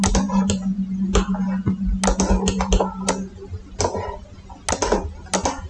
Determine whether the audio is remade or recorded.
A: recorded